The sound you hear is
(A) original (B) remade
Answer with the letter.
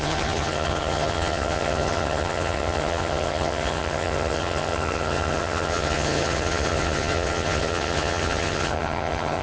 B